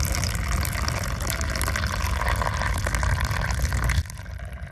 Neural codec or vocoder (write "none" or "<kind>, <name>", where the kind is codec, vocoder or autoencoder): none